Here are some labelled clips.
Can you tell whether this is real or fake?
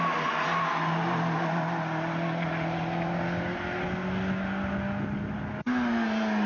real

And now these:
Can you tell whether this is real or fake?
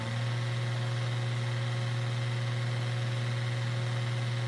real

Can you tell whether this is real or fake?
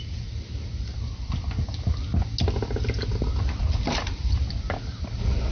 real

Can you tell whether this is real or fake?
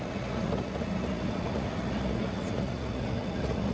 fake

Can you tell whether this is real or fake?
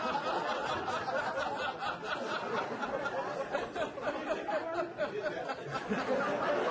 real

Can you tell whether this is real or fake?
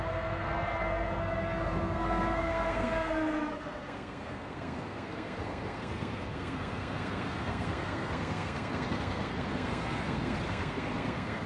fake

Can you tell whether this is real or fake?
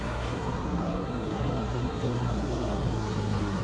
fake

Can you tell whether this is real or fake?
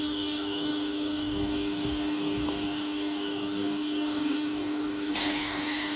fake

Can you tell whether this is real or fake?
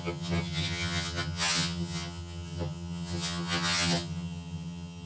fake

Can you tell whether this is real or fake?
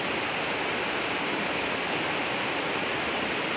real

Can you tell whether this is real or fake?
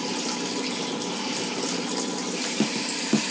real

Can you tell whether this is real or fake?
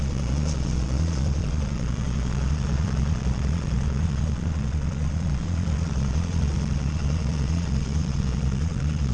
fake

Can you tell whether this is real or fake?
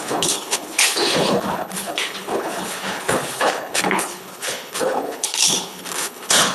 fake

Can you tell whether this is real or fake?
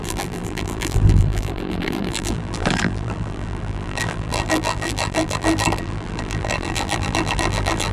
fake